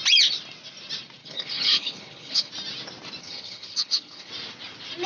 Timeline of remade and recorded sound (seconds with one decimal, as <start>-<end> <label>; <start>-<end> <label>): 0.0-1.2 recorded; 1.2-2.5 remade; 2.5-3.2 recorded; 3.2-4.3 remade; 4.3-5.1 recorded